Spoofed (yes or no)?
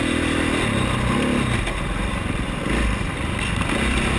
no